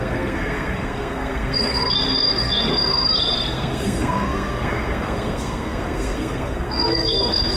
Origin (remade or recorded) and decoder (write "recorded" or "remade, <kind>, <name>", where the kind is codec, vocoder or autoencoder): remade, codec, SNAC